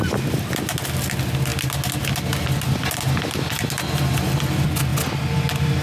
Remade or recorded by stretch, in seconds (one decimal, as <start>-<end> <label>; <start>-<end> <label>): 0.0-5.8 recorded